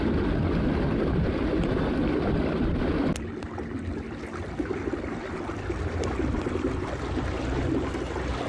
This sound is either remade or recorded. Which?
recorded